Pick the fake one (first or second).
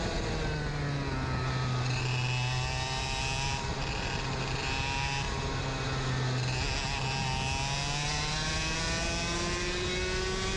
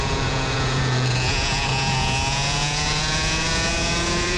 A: second